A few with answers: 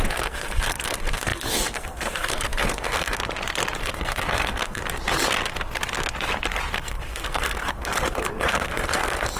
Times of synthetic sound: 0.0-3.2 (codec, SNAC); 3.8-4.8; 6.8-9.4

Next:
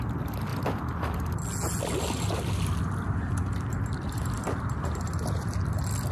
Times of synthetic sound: none

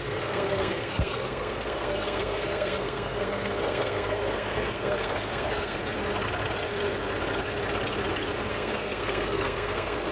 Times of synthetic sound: 0.0-5.8 (codec, SNAC); 8.5-10.1

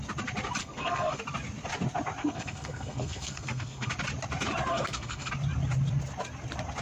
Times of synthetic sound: 0.6-1.2 (codec, SNAC); 2.2-3.9; 4.7-5.3